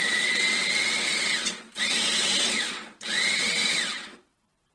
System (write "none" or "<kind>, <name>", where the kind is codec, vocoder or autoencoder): vocoder, WaveNeXt